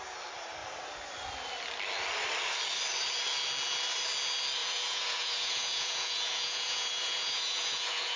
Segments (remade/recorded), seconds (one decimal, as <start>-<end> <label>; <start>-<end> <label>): 0.0-4.6 recorded; 4.6-8.2 remade